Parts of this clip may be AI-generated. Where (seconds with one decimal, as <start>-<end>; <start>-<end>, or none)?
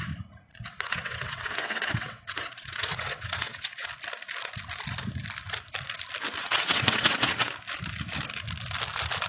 0.5-3.9; 6.4-7.5